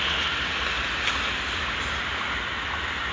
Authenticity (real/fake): real